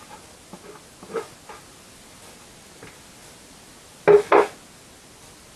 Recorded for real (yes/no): yes